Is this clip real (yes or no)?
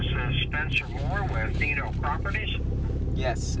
yes